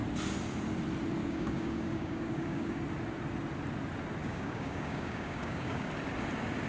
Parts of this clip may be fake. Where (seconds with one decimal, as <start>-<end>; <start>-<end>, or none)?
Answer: 1.2-2.8; 4.2-5.9